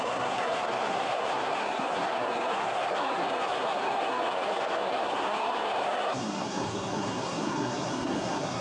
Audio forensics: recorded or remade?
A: remade